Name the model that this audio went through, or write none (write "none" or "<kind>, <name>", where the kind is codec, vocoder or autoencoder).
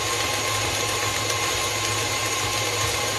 none